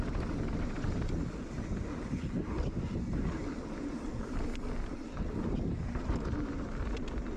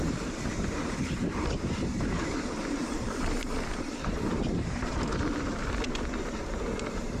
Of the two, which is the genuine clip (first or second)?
first